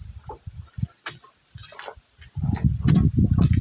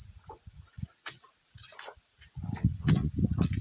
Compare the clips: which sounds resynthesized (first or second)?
second